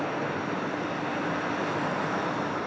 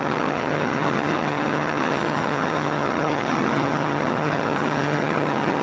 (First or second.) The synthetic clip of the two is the second